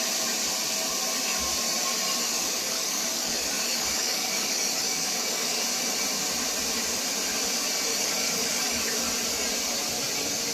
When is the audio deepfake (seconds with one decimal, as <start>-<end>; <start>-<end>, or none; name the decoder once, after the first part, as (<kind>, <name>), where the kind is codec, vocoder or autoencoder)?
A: 2.3-5.6 (codec, DAC); 7.9-8.8